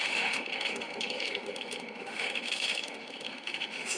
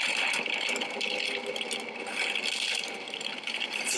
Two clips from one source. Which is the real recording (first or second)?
second